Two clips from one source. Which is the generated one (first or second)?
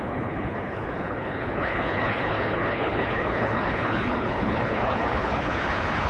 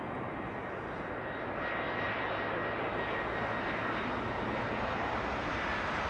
first